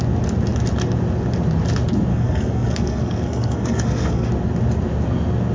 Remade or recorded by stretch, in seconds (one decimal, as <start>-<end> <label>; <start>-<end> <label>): 0.0-2.1 recorded; 2.1-4.3 remade; 4.3-5.5 recorded